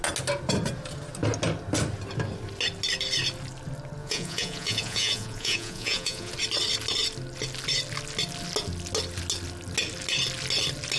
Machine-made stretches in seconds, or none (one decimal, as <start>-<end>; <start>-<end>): 4.0-6.3